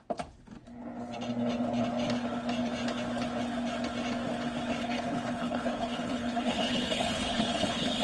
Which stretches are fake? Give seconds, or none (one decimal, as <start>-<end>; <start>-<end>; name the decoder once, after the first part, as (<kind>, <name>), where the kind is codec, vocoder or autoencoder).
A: 4.8-8.0 (codec, HILCodec)